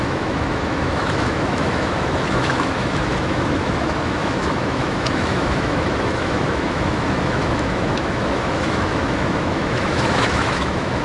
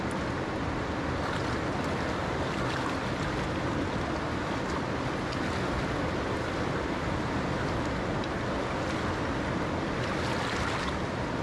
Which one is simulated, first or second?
first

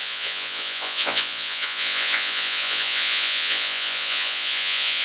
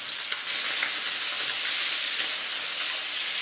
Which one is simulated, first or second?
first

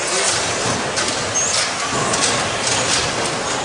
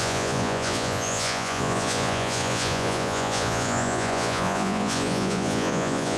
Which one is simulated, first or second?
second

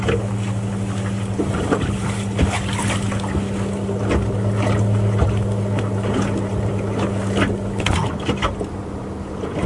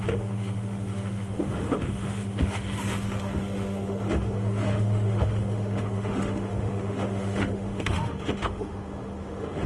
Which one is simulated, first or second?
second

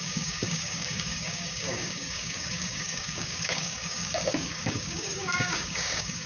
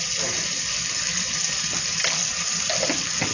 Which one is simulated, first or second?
first